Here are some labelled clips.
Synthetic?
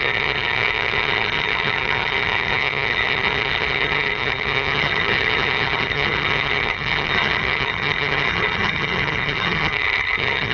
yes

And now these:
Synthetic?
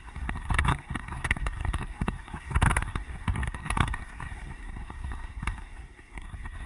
yes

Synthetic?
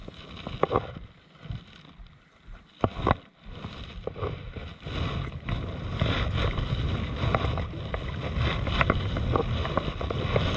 no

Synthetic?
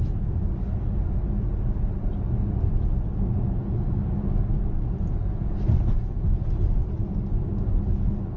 no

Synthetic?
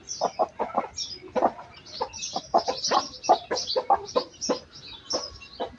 no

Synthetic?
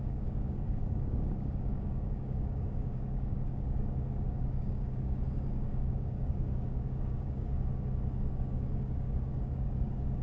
yes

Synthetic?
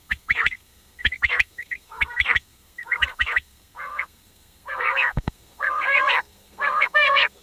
yes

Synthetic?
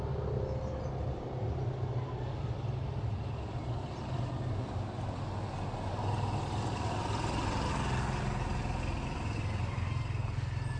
no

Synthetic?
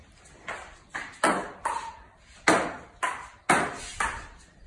no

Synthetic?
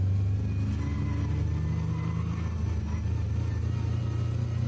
no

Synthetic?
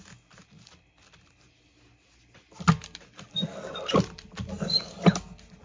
no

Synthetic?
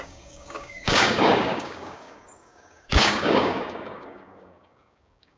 yes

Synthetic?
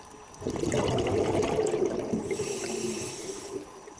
no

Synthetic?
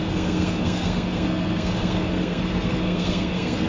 yes